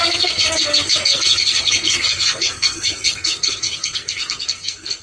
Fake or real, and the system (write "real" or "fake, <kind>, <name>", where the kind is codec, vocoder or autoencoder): fake, codec, SNAC